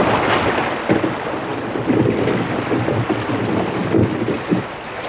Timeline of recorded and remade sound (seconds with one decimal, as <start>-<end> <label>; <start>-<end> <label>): 0.0-5.1 recorded